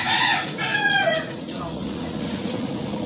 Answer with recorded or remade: remade